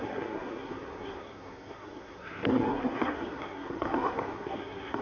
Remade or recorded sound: remade